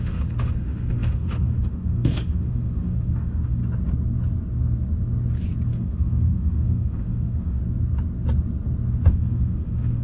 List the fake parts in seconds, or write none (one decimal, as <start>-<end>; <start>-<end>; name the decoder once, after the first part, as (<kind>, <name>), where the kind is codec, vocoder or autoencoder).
0.0-3.6 (autoencoder, DAC-VAE); 5.7-7.6; 9.1-10.0